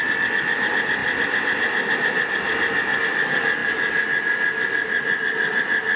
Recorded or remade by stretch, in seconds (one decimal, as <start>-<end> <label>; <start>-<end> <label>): 0.0-6.0 recorded